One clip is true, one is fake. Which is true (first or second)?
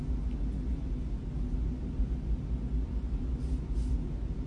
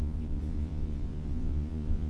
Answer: first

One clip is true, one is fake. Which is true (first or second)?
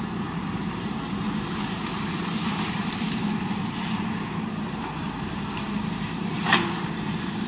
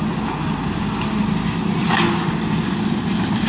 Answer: second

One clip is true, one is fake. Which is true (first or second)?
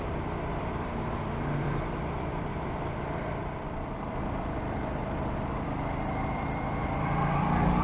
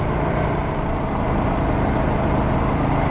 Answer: second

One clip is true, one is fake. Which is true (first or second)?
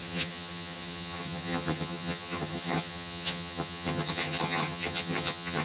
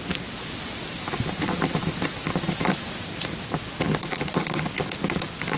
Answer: second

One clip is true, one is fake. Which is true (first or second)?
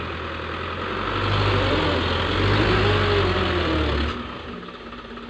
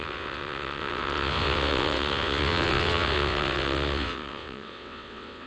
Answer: first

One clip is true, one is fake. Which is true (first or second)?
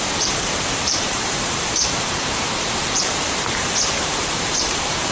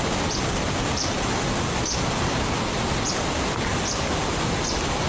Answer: second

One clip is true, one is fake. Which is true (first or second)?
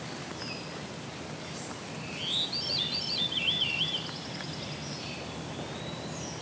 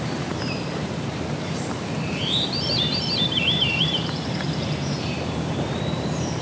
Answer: first